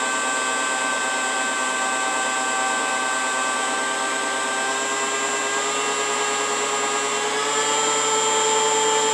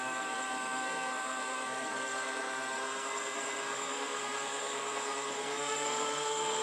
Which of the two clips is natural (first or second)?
first